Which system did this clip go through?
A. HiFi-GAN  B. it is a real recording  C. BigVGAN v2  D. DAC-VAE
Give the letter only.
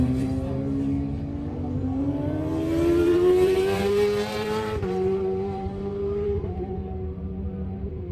C